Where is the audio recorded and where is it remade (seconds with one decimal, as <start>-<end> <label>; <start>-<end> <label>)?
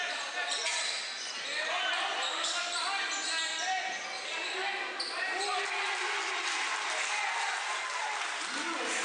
0.0-9.0 recorded